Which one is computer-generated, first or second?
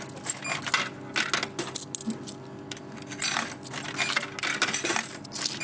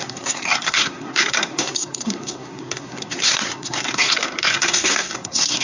second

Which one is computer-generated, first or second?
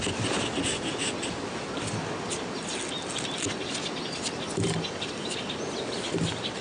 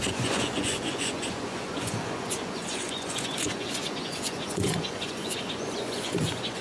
second